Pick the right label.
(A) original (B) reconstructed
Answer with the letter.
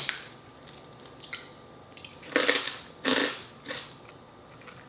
B